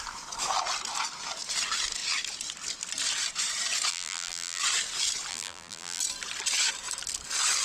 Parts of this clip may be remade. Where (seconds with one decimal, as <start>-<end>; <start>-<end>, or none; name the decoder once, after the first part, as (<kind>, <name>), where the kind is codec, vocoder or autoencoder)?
3.9-4.6 (vocoder, BigVGAN v2); 5.3-6.0

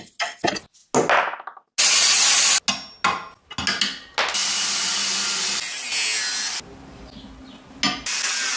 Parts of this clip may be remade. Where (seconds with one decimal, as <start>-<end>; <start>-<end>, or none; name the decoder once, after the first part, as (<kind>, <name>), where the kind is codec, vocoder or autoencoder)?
none